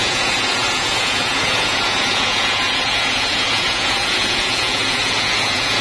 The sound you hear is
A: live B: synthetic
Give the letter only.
B